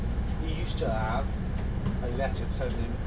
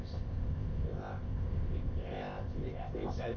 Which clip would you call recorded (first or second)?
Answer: first